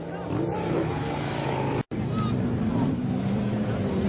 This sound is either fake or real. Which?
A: fake